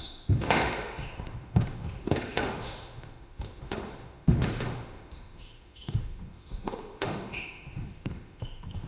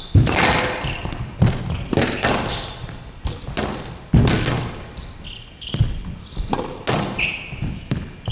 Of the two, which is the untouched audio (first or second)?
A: second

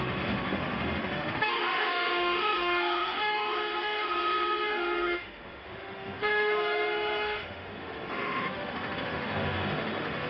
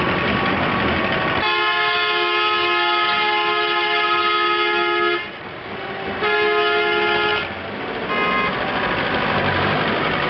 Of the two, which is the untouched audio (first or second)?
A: second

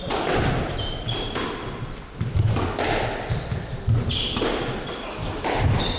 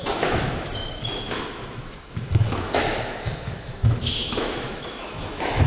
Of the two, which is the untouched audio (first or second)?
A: first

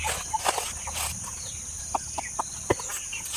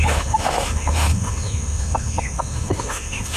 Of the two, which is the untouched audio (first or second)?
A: first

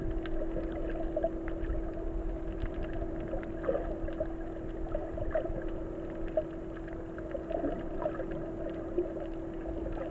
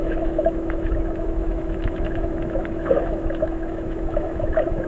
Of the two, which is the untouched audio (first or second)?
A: first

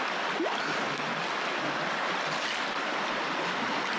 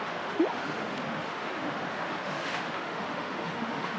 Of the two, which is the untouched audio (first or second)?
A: first